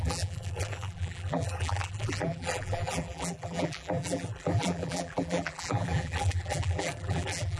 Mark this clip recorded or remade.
remade